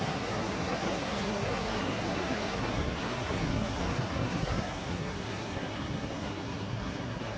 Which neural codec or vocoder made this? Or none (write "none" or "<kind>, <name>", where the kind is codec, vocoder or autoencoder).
codec, SNAC